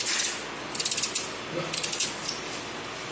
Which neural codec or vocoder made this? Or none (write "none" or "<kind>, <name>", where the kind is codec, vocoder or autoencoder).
none